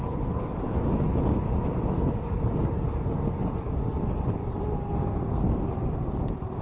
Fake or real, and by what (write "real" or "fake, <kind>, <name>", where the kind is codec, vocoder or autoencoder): real